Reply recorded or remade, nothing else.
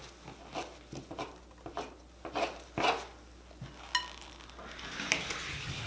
recorded